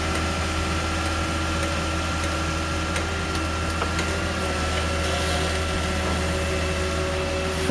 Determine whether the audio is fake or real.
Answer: real